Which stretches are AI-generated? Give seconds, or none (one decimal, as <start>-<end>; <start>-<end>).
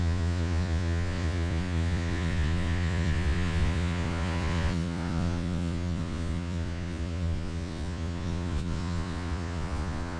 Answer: 0.0-10.2